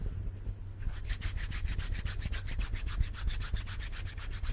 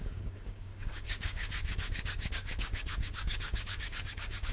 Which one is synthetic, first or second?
second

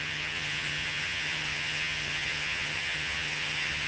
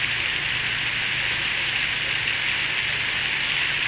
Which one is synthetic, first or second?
first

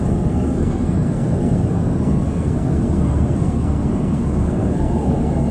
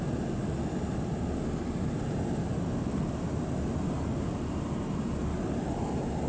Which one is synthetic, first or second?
first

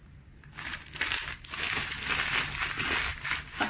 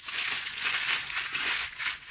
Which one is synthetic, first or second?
second